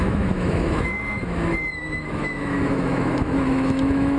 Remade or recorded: remade